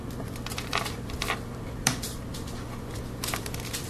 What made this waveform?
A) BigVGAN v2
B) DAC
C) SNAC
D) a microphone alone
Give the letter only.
A